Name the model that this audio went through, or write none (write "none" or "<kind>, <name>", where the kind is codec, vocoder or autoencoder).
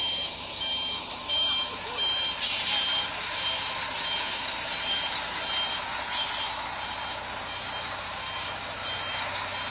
none